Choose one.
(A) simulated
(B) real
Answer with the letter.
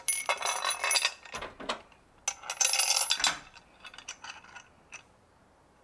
B